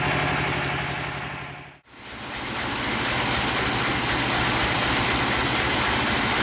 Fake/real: real